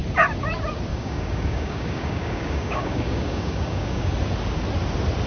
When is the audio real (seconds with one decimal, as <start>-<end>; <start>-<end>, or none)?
0.0-0.9; 4.1-5.3